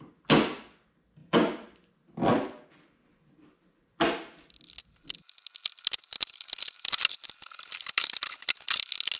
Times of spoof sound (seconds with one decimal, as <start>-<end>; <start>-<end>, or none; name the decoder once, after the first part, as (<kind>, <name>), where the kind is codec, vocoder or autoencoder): none